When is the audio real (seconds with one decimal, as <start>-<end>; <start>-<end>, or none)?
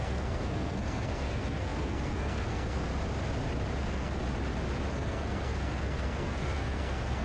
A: 2.9-3.8; 4.2-4.9